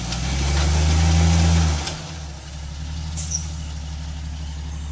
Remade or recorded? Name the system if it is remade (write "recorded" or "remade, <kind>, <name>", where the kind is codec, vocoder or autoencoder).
recorded